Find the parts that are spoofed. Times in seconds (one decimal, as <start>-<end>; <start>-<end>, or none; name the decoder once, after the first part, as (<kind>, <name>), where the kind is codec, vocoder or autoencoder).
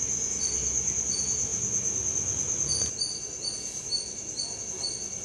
none